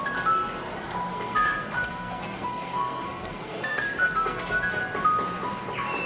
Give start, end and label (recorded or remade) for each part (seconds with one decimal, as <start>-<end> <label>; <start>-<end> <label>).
0.0-1.1 recorded; 1.1-4.8 remade; 4.8-6.1 recorded

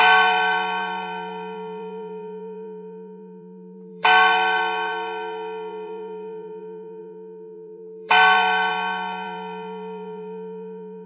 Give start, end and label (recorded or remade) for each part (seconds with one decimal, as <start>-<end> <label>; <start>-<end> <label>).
0.0-11.1 remade

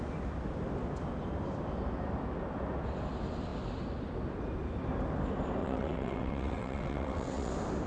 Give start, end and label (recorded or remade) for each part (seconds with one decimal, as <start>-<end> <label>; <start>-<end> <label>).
0.0-5.6 recorded; 5.6-7.5 remade; 7.5-7.9 recorded

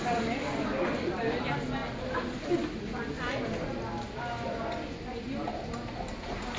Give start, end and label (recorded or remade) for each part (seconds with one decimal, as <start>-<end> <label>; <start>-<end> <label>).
0.0-6.6 recorded

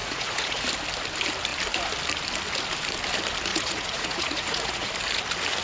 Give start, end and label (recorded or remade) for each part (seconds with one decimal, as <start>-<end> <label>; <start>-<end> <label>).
0.0-0.6 remade; 0.6-3.5 recorded; 3.5-4.9 remade; 4.9-5.6 recorded

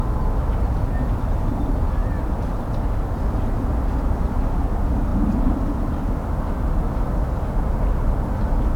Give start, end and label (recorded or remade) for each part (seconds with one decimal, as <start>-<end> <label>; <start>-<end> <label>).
0.0-2.0 recorded; 2.0-3.1 remade; 3.1-8.8 recorded